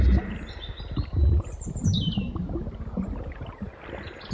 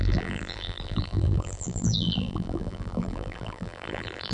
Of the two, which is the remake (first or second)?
second